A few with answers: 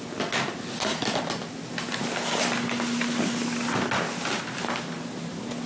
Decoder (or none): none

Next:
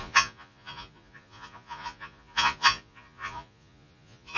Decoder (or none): vocoder, Vocos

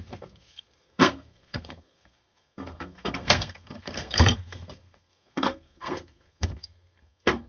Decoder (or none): codec, SNAC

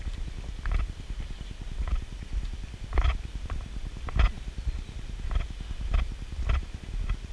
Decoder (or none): none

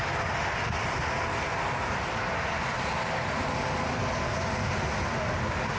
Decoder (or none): none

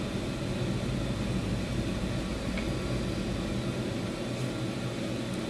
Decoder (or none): none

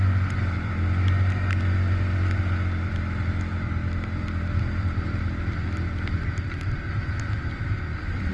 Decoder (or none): none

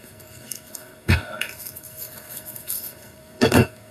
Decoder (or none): codec, SNAC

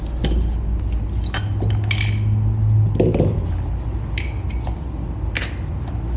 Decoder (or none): none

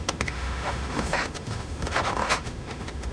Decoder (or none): autoencoder, DAC-VAE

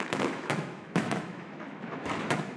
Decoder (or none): autoencoder, DAC-VAE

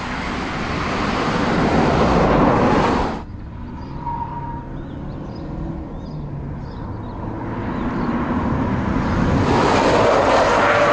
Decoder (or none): none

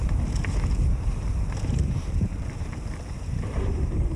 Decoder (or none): vocoder, BigVGAN v2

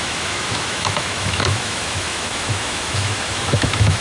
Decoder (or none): autoencoder, DAC-VAE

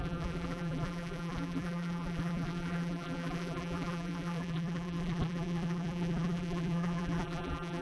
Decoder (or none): vocoder, BigVGAN v2